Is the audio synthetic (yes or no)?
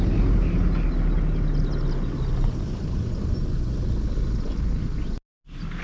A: no